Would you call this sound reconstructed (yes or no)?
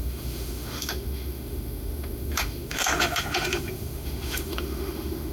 yes